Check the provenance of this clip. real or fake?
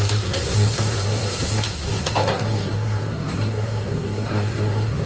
fake